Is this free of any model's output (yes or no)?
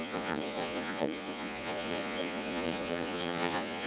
no